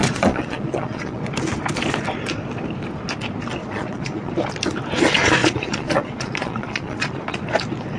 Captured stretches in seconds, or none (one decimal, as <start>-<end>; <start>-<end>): 1.2-3.6; 4.3-5.4; 7.4-8.0